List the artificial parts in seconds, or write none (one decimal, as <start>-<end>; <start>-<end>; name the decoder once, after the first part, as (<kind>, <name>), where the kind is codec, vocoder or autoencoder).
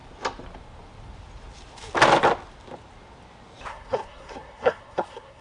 3.7-5.4 (codec, SNAC)